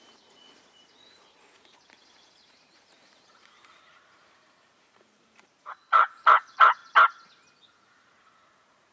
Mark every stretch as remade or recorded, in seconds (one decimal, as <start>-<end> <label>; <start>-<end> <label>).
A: 0.0-6.8 remade; 6.8-7.5 recorded; 7.5-8.9 remade